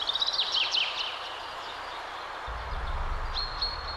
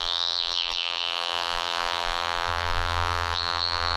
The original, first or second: first